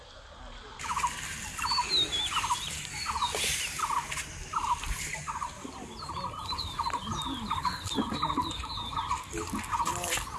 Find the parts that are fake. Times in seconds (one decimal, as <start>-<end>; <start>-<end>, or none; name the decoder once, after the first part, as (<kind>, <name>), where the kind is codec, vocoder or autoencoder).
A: none